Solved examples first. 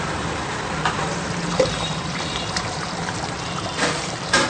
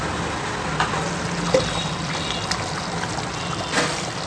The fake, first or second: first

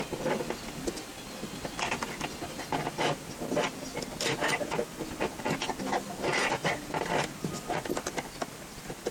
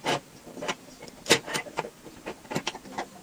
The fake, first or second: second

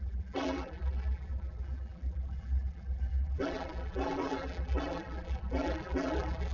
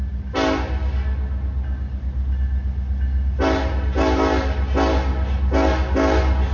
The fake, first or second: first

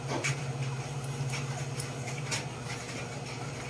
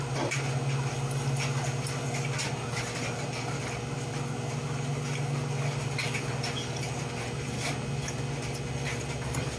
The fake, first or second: first